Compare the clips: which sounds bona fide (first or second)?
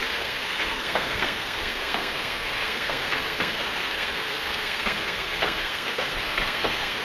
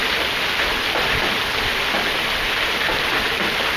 second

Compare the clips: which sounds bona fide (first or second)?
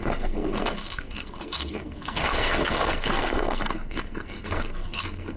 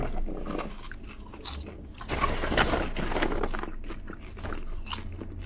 second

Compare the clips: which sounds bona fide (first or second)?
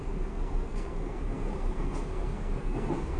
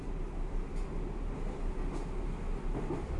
second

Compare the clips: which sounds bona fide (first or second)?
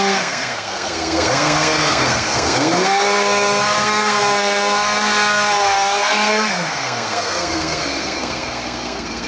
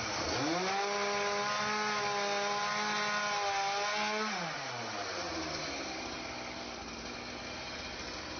second